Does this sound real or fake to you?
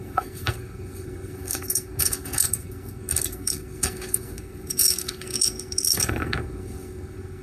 fake